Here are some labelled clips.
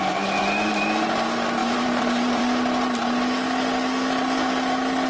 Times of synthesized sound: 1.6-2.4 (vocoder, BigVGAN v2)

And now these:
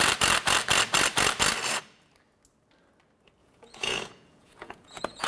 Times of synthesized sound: 3.4-5.3 (vocoder, Vocos)

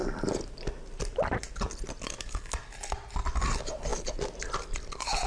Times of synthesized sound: none

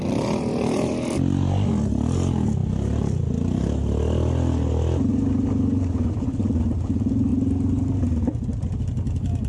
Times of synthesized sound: none